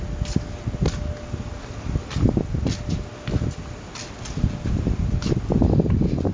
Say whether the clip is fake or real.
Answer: real